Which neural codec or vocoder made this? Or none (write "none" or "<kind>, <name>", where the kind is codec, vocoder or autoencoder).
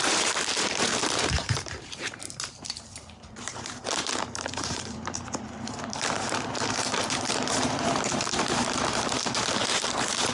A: vocoder, BigVGAN v2